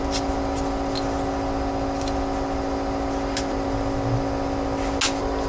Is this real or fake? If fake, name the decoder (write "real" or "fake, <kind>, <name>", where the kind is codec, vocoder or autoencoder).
real